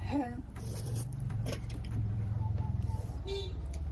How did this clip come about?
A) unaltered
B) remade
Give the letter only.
B